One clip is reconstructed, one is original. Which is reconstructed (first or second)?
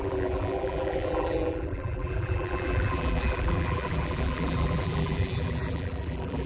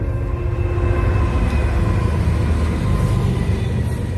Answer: first